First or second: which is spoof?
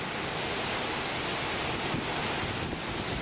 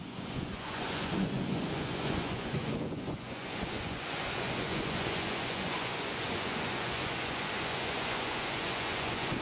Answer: second